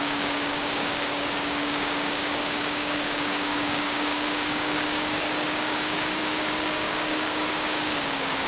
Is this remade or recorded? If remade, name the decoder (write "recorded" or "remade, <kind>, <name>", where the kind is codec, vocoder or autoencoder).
remade, codec, DAC